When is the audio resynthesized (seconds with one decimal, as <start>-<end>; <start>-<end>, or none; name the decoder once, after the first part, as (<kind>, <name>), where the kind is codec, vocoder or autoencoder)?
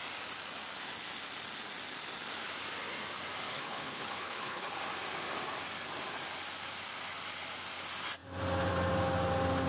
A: 3.5-4.7 (codec, HILCodec)